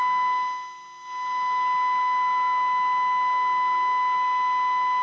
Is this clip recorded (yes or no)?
yes